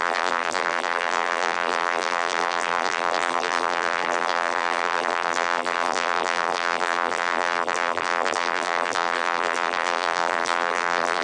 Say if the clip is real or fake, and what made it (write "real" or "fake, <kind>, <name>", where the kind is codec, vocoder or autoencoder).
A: fake, vocoder, BigVGAN v2